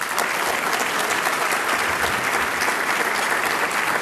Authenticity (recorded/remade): recorded